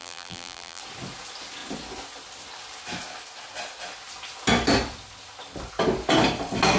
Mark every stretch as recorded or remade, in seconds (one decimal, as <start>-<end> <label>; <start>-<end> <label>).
0.0-0.8 remade; 0.8-6.8 recorded